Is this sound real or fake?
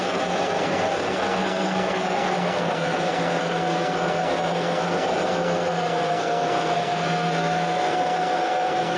fake